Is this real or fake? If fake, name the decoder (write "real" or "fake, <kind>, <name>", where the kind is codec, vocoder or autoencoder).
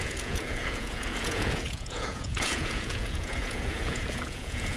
fake, vocoder, Vocos